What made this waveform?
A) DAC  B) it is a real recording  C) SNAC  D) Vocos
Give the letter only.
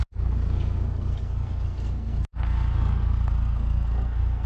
C